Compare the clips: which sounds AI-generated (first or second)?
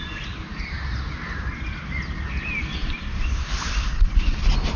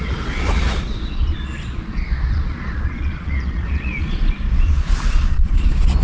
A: second